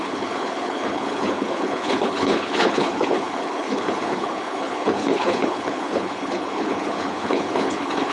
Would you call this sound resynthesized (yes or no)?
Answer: yes